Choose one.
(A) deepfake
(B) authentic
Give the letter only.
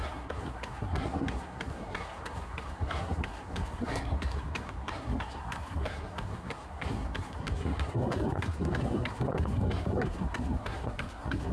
A